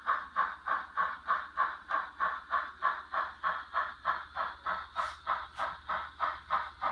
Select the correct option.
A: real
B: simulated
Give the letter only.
A